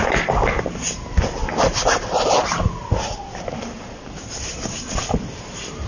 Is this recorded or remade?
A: recorded